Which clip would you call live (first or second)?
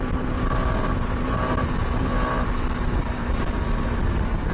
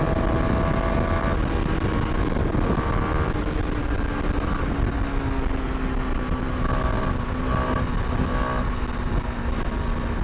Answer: second